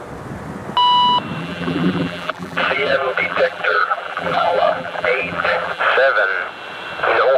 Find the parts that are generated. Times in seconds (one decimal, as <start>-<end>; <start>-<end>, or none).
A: 1.4-5.8